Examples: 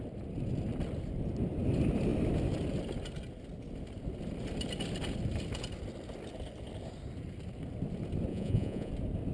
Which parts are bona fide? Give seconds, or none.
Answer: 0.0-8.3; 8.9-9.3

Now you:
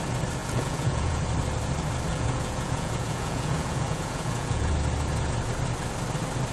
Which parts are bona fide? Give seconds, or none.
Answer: 0.0-0.4; 1.2-2.1; 4.7-6.5

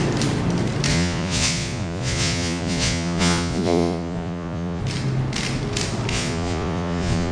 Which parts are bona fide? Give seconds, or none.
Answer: 0.0-0.9; 4.8-6.1

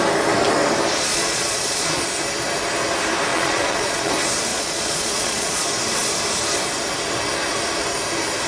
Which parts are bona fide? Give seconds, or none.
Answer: 0.0-1.1; 2.0-3.3; 4.1-4.5; 5.6-8.5

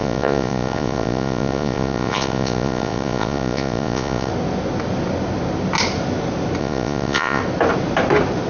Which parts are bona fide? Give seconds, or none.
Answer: 4.3-6.6; 7.4-8.5

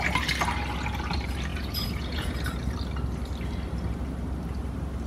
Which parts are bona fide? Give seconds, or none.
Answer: 0.0-1.5; 2.3-5.1

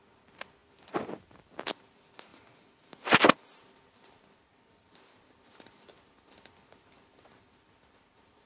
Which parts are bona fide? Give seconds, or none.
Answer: 0.0-8.5